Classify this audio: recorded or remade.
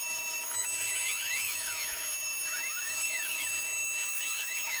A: remade